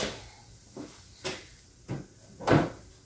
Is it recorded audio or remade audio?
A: recorded